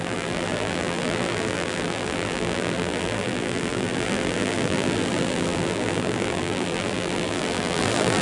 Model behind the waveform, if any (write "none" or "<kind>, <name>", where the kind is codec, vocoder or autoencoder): vocoder, BigVGAN v2